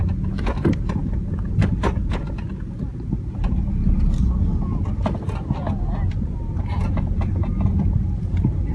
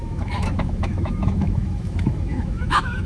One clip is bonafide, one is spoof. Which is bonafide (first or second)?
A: first